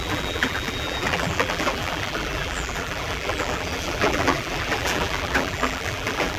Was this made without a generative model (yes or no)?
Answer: no